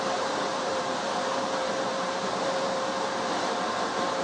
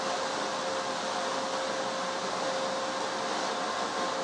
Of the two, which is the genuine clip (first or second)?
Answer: second